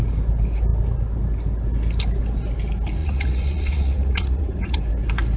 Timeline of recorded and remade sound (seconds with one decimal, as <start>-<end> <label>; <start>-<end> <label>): 0.0-3.0 recorded; 3.0-4.8 remade; 4.8-5.4 recorded